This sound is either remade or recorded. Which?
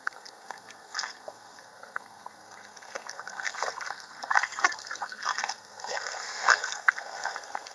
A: remade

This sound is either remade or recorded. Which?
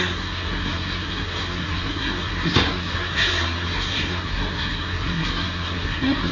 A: remade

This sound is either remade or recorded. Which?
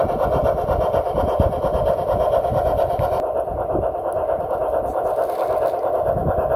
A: recorded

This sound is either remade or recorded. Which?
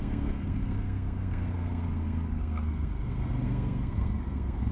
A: remade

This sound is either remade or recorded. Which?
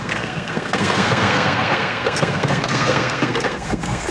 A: remade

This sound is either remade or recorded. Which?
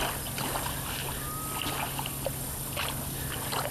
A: recorded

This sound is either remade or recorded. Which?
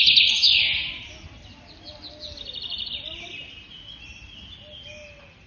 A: recorded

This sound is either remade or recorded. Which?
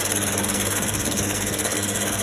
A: remade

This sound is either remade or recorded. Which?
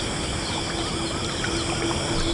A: recorded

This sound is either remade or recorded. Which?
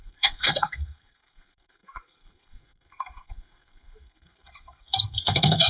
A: remade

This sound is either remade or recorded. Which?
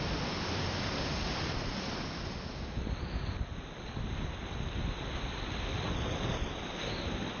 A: recorded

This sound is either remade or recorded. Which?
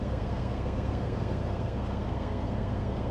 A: remade